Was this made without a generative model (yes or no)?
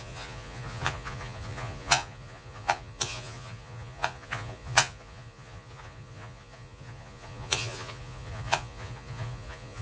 no